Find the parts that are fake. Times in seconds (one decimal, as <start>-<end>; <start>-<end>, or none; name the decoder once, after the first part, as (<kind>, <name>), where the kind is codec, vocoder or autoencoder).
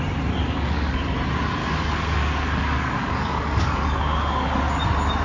0.4-1.0 (codec, DAC); 1.6-4.6